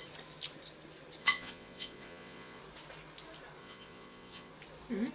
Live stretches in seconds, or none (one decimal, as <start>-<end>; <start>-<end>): 0.0-1.2; 2.6-3.6; 4.5-5.1